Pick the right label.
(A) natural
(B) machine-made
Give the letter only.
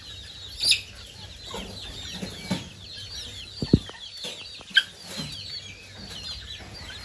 A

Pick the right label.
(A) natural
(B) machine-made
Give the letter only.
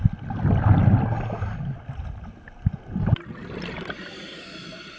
A